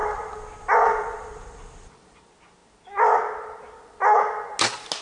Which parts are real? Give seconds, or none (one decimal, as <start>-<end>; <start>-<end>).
2.2-5.0